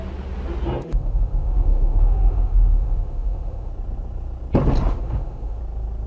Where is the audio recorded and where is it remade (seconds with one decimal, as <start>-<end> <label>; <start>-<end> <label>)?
0.0-0.8 recorded; 0.8-3.7 remade; 3.7-4.9 recorded; 4.9-5.6 remade; 5.6-6.1 recorded